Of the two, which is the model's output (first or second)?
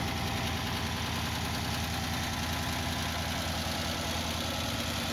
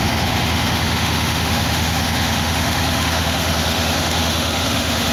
second